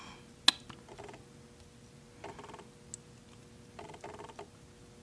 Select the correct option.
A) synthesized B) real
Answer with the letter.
B